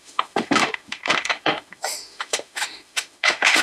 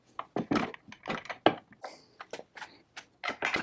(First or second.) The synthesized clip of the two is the first